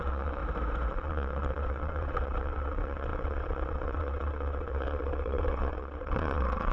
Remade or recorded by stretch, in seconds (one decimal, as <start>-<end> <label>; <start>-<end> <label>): 0.0-0.4 remade; 0.4-0.9 recorded; 0.9-6.7 remade